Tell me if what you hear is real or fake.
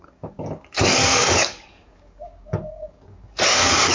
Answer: fake